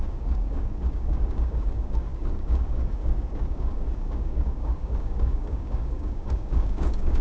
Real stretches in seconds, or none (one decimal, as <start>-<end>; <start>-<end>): none